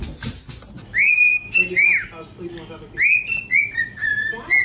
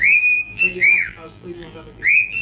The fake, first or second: second